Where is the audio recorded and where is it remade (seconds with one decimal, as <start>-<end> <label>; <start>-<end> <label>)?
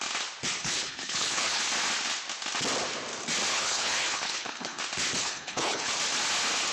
0.0-0.6 recorded; 0.6-1.6 remade; 1.6-3.5 recorded; 3.5-4.8 remade; 4.8-5.2 recorded; 5.2-5.9 remade; 5.9-6.7 recorded